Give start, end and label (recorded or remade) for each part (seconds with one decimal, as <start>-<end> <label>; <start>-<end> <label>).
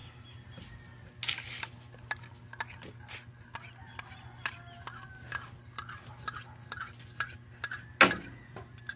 0.0-9.0 recorded